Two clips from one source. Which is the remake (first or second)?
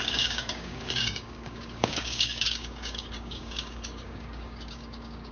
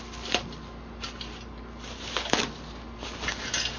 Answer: first